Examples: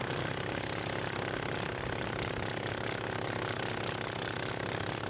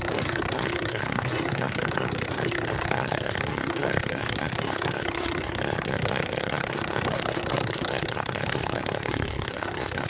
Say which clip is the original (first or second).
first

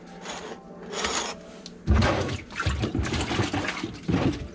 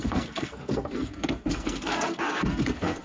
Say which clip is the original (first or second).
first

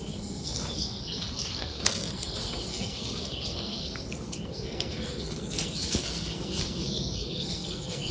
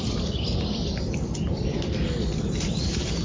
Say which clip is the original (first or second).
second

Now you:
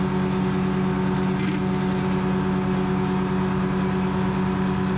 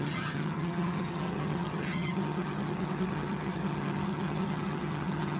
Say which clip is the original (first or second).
first